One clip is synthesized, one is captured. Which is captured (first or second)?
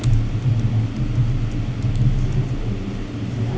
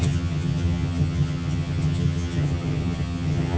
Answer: first